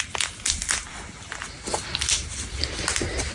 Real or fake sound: real